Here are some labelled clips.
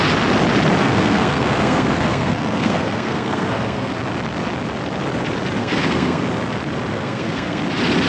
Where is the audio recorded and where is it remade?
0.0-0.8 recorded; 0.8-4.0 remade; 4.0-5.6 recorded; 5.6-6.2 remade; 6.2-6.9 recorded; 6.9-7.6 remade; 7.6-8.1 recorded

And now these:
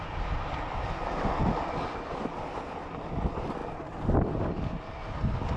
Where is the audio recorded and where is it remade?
0.0-5.6 recorded

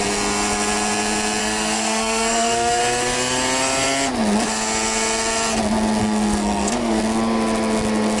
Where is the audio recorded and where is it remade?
0.0-1.4 recorded; 1.4-2.8 remade; 2.8-6.0 recorded; 6.0-7.0 remade; 7.0-8.2 recorded

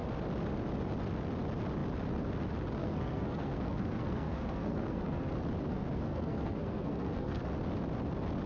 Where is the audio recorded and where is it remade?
0.0-2.8 recorded; 2.8-5.3 remade; 5.3-5.7 recorded; 5.7-7.4 remade; 7.4-8.5 recorded

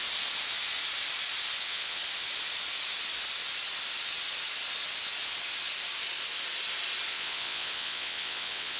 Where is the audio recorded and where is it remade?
0.0-1.6 recorded; 1.6-2.0 remade; 2.0-7.1 recorded; 7.1-8.8 remade

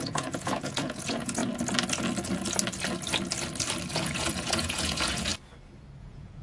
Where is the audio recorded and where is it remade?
0.0-1.4 remade; 1.4-3.9 recorded; 3.9-5.3 remade; 5.3-6.0 recorded; 6.0-6.4 remade